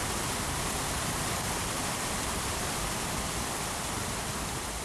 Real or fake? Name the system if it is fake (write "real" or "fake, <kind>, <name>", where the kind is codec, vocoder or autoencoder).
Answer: real